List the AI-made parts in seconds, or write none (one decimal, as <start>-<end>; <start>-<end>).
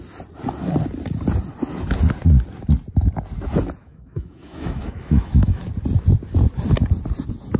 3.8-5.6